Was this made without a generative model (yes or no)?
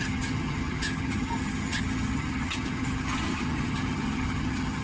no